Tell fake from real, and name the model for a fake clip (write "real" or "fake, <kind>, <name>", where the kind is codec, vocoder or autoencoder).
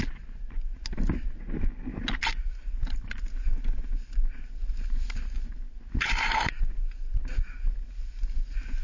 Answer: real